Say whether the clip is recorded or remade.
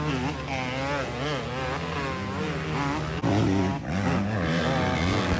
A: recorded